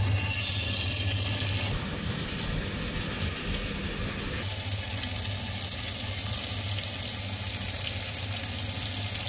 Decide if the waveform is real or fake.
real